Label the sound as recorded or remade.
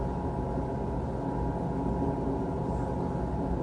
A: recorded